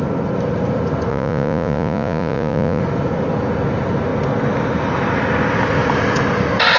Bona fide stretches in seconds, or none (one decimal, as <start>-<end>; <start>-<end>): 0.0-1.1; 2.8-6.8